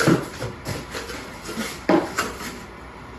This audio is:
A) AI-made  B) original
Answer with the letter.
A